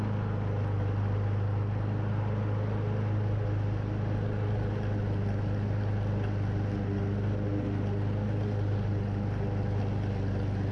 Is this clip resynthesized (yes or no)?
no